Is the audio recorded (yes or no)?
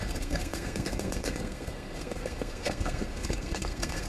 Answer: no